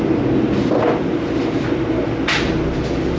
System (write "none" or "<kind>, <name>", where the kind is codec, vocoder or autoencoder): none